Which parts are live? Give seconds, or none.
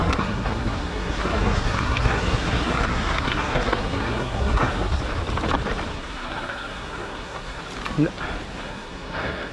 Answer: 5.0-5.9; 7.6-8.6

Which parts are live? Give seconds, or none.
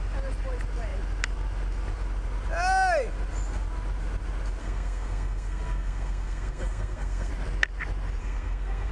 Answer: 0.0-4.6; 7.3-8.2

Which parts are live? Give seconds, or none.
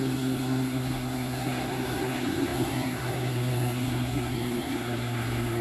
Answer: none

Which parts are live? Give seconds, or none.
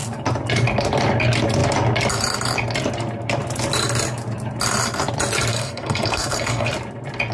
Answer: 0.0-5.5; 6.7-7.3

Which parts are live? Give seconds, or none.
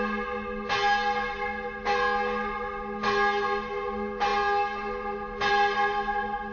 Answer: 0.0-6.5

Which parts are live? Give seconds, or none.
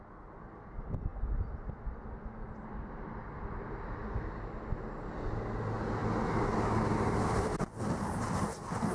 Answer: 0.0-8.9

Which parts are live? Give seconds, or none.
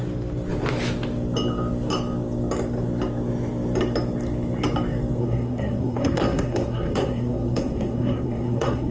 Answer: 0.0-5.2